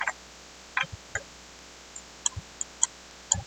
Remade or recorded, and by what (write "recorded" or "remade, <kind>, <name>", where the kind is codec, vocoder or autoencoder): recorded